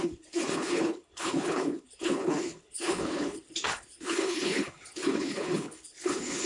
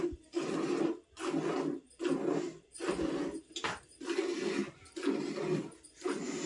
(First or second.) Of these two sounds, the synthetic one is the first